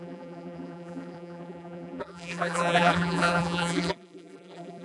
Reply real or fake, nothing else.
fake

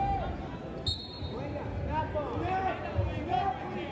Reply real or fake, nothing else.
real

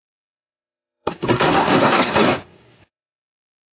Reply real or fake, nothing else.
fake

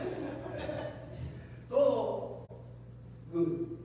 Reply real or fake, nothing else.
real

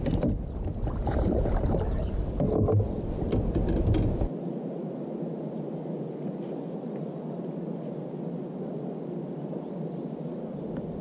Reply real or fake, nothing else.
real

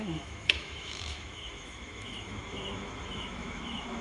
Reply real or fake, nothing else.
fake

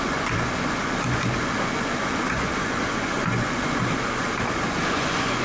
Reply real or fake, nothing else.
fake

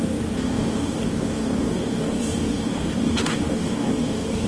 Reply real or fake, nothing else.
fake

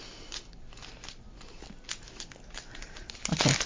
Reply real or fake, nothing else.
real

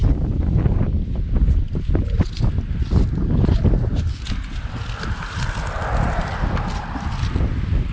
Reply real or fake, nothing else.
real